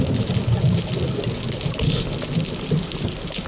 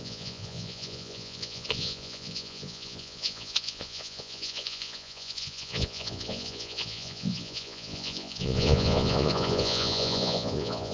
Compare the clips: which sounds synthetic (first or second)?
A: second